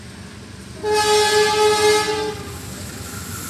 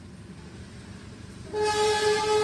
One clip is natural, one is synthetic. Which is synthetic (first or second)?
second